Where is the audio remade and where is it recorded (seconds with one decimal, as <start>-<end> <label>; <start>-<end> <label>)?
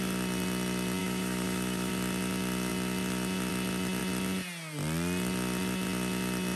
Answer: 0.0-1.0 recorded; 1.0-1.9 remade; 1.9-6.6 recorded